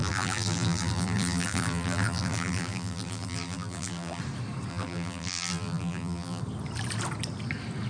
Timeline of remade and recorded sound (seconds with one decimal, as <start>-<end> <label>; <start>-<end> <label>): 0.0-4.2 remade; 4.2-4.7 recorded; 4.7-6.4 remade; 6.4-7.9 recorded